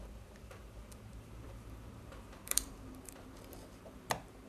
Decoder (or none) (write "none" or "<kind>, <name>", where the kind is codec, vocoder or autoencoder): vocoder, BigVGAN v2